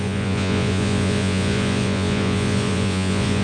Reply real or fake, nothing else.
fake